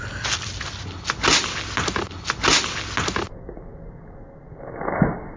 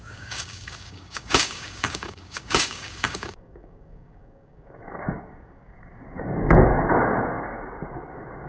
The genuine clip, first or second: first